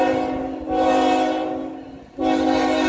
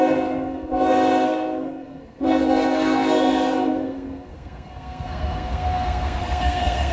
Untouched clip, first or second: first